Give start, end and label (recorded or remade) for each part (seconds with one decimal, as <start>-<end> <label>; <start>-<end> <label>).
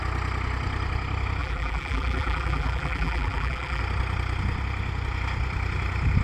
0.0-1.4 recorded; 1.4-3.8 remade; 3.8-6.2 recorded